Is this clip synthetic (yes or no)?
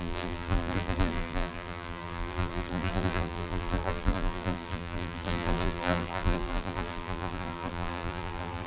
yes